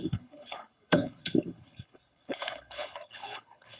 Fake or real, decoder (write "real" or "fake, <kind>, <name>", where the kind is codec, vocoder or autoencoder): fake, codec, HILCodec